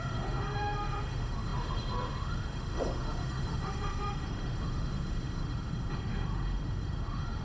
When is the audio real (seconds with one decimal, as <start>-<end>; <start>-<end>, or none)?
none